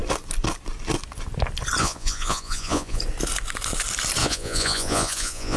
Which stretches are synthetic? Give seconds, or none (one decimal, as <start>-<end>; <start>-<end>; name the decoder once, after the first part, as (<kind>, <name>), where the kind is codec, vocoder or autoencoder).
1.8-3.0 (vocoder, Vocos); 4.2-5.6

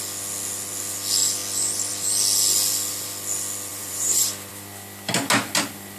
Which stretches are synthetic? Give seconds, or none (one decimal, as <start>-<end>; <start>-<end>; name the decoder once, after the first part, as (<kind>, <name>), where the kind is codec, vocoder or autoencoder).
3.7-4.5 (vocoder, BigVGAN v2)